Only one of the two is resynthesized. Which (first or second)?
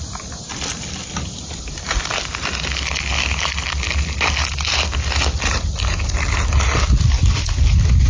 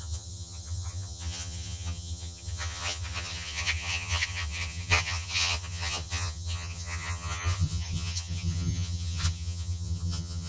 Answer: second